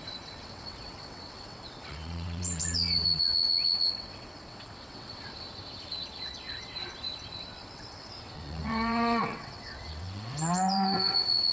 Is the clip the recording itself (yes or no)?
no